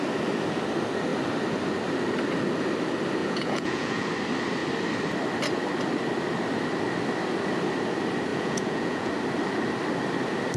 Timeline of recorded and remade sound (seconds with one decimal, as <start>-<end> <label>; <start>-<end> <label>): 0.0-3.2 recorded; 3.2-4.1 remade; 4.1-8.3 recorded; 8.3-9.1 remade; 9.1-10.6 recorded